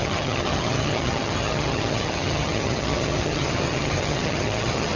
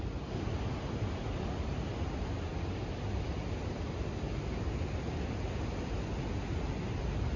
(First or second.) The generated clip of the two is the first